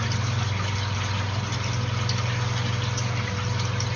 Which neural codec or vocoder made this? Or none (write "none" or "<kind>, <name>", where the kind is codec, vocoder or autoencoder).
none